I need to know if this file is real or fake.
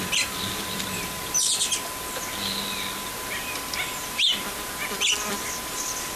real